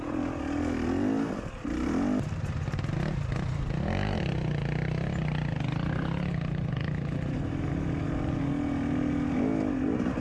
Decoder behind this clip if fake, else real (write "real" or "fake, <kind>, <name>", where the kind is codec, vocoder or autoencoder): real